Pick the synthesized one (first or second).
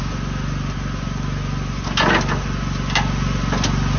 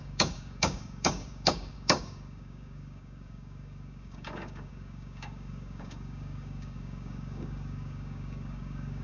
second